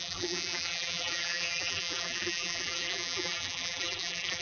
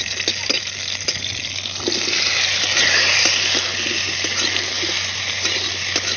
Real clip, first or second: second